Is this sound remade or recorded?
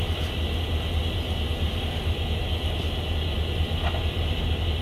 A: recorded